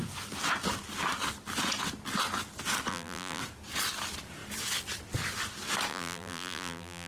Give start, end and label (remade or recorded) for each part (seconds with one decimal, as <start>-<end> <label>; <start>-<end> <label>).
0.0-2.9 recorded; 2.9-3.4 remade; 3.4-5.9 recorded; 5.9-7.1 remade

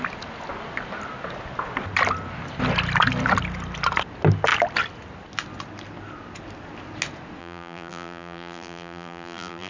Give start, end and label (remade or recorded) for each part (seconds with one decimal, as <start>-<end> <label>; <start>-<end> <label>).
0.0-7.4 recorded; 7.4-9.7 remade

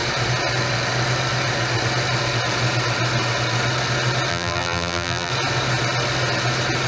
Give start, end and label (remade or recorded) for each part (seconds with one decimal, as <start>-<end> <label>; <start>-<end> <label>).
0.0-4.3 recorded; 4.3-5.3 remade; 5.3-6.9 recorded